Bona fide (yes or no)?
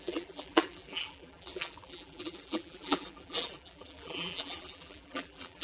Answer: no